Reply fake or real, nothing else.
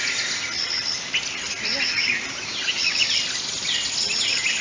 real